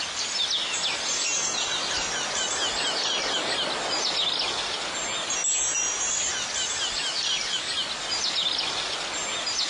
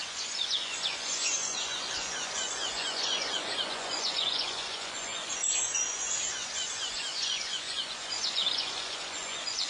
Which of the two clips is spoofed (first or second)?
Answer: second